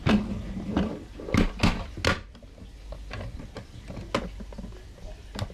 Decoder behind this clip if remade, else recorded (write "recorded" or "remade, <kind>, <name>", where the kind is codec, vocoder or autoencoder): recorded